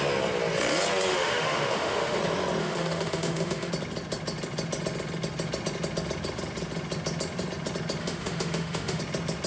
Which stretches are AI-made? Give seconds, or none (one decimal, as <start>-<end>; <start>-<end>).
1.1-2.2; 2.6-3.7; 8.0-9.0